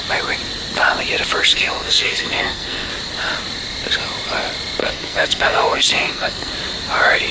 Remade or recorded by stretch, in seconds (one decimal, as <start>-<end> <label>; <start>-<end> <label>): 0.0-1.5 recorded; 1.5-2.9 remade; 2.9-4.8 recorded; 4.8-6.5 remade; 6.5-7.3 recorded